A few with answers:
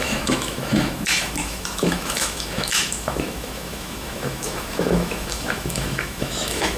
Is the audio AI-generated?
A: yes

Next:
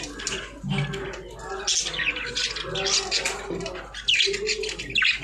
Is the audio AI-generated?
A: no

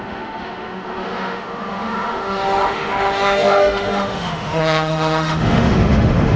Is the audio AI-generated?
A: yes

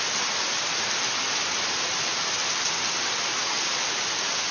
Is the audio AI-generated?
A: no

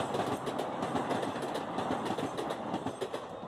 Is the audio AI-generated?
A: no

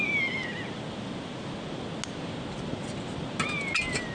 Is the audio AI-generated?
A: no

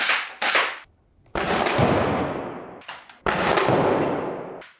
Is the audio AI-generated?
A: no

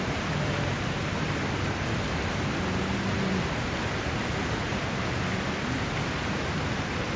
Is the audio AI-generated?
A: no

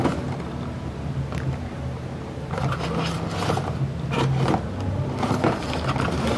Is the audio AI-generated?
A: no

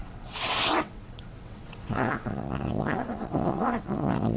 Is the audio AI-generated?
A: yes